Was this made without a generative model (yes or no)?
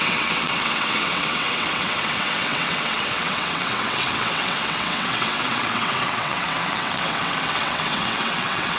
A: no